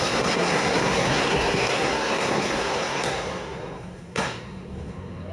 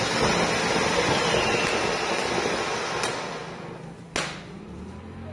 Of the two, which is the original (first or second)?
second